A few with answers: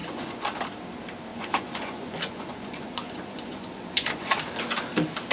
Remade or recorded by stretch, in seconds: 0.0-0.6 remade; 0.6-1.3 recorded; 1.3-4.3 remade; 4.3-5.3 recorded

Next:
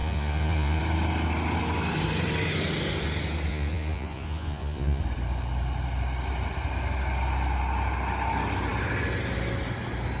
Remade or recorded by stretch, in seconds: 0.0-0.8 remade; 0.8-3.5 recorded; 3.5-5.0 remade; 5.0-10.2 recorded

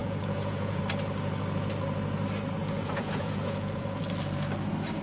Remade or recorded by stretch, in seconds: 0.0-0.8 remade; 0.8-2.6 recorded; 2.6-4.0 remade; 4.0-5.0 recorded